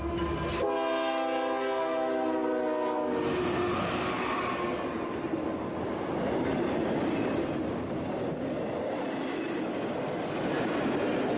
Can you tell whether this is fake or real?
real